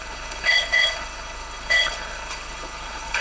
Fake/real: fake